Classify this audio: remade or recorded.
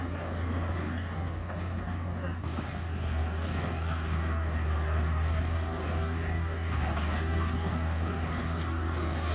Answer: remade